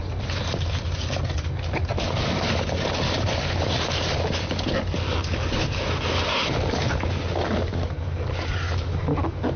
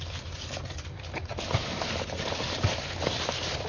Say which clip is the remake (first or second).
second